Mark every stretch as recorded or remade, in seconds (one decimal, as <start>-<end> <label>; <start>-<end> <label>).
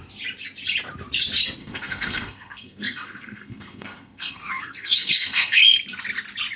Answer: 0.0-1.6 recorded; 1.6-5.6 remade; 5.6-6.6 recorded